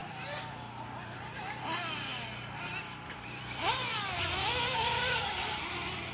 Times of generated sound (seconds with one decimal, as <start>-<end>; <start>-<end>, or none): 0.0-2.1; 2.8-6.1